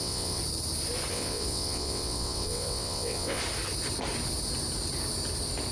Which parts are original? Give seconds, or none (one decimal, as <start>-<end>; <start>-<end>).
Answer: 0.4-1.1; 3.4-5.7